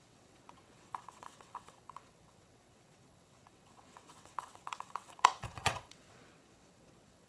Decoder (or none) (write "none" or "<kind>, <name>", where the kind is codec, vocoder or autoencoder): vocoder, WaveNeXt